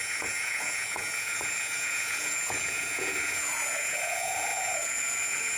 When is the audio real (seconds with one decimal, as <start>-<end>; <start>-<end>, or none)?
none